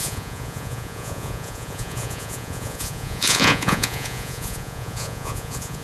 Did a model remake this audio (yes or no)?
yes